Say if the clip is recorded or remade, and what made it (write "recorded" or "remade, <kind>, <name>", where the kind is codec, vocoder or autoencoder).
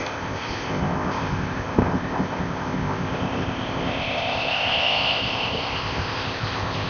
remade, codec, ZipCodec